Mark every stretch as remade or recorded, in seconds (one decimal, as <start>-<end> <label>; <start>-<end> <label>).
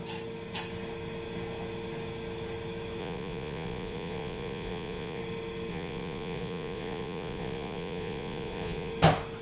0.0-3.0 recorded; 3.0-5.2 remade; 5.2-5.7 recorded; 5.7-8.9 remade; 8.9-9.4 recorded